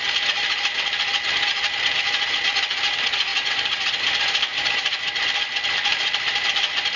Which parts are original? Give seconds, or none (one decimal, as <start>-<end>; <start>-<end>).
0.0-5.9